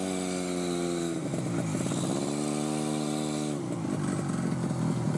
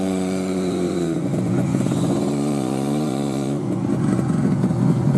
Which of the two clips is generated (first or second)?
second